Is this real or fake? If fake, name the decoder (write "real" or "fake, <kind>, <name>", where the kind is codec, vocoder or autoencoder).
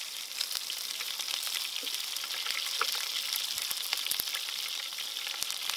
real